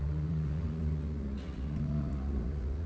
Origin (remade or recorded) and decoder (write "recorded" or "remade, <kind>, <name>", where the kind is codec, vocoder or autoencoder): remade, vocoder, Vocos